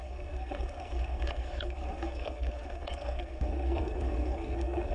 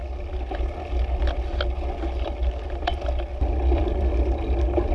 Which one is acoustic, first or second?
second